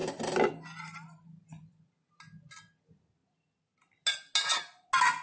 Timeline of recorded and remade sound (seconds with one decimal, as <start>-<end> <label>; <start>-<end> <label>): 0.0-5.2 recorded